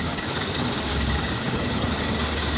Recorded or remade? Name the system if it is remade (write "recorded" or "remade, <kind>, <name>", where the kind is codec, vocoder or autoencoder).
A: remade, codec, DAC